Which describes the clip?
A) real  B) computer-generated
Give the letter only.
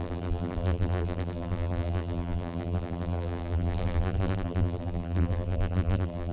B